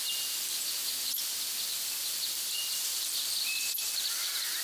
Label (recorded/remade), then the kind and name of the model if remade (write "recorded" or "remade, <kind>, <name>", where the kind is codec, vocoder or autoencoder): recorded